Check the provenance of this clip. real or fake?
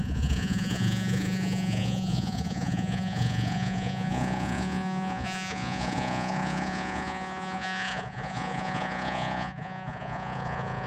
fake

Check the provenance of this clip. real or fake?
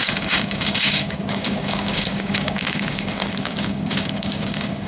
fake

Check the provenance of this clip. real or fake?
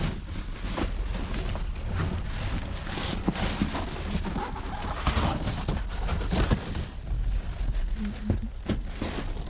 real